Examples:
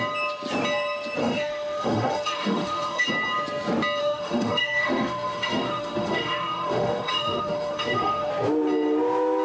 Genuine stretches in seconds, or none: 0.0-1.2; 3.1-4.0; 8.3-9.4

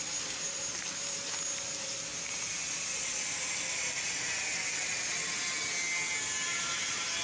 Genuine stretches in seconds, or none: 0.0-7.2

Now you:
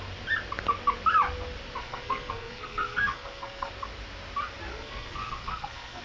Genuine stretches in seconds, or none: 0.0-1.8; 3.7-4.7